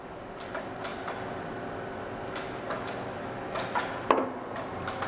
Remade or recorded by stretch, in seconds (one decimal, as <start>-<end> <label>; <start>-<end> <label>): 0.0-5.1 recorded